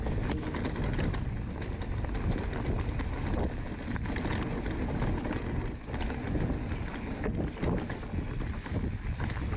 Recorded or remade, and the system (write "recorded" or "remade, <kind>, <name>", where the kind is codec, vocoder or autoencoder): recorded